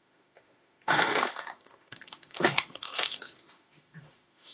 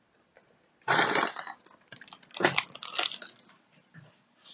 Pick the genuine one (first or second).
second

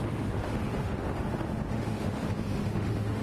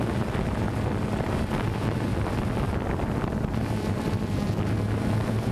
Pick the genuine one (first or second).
second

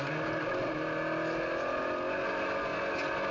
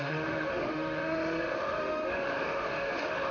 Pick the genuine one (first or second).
first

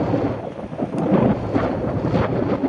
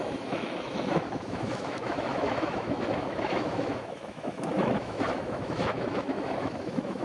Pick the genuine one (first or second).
first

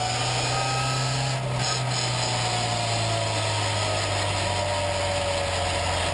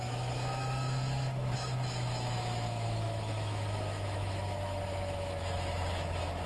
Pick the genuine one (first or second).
first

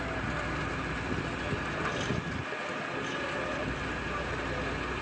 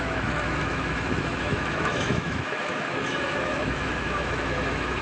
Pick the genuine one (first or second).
first